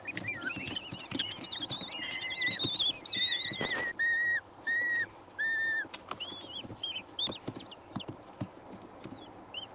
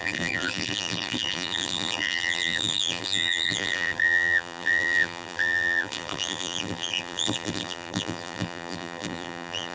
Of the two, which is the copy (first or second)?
second